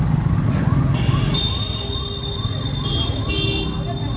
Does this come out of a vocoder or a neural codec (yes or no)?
no